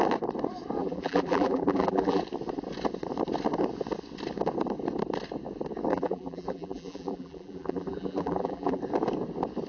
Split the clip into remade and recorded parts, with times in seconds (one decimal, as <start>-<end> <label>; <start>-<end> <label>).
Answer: 0.0-0.8 recorded; 0.8-2.2 remade; 2.2-5.9 recorded; 5.9-8.8 remade; 8.8-9.7 recorded